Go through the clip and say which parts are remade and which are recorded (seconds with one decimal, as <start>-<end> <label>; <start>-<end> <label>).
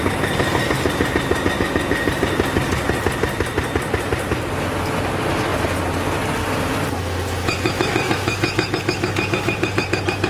0.0-10.3 recorded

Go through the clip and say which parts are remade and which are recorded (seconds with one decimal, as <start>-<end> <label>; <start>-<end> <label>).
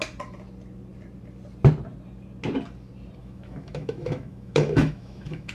0.0-3.2 recorded; 3.2-5.5 remade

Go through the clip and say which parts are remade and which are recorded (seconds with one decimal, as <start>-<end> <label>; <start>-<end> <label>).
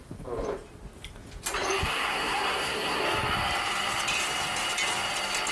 0.0-1.8 recorded; 1.8-3.0 remade; 3.0-5.5 recorded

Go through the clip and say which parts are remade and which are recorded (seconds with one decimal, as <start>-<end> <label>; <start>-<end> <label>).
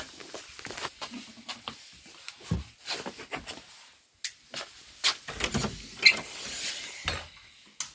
0.0-0.9 recorded; 0.9-2.5 remade; 2.5-7.9 recorded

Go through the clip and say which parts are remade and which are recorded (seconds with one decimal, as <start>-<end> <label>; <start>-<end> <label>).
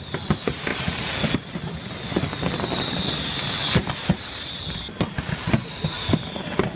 0.0-6.8 recorded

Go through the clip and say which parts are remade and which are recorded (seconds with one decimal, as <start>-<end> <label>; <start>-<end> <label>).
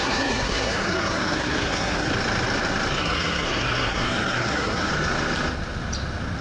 0.0-2.1 remade; 2.1-3.0 recorded; 3.0-4.9 remade; 4.9-6.4 recorded